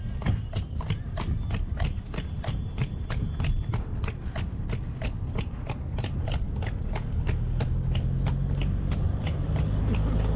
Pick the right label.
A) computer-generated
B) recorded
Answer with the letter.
B